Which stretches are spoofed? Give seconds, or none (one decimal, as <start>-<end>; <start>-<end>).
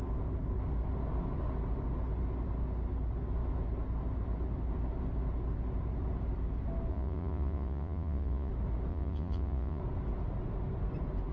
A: 6.9-8.5; 8.9-9.8